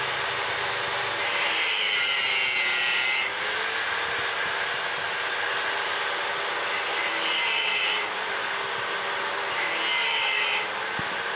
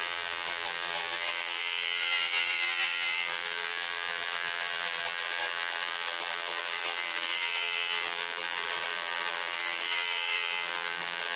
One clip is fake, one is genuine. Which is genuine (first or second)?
first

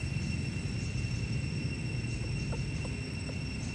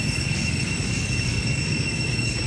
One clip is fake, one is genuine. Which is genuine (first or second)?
first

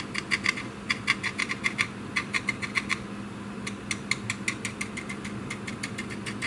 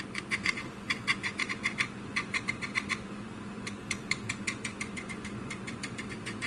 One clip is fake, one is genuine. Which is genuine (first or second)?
first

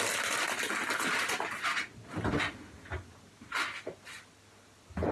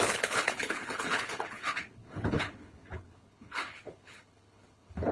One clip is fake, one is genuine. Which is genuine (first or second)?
first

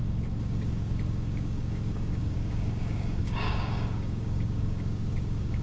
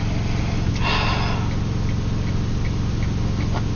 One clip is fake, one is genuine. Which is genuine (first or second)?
second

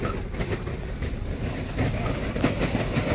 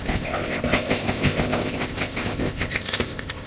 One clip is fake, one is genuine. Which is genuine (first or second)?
first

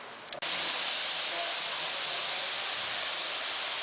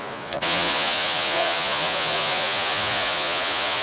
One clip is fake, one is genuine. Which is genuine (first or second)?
first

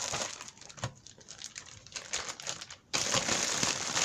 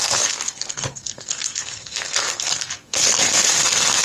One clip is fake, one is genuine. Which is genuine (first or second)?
first